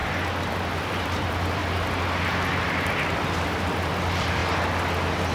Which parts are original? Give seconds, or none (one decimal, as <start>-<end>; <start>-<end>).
0.0-0.8; 1.6-3.2; 4.4-5.3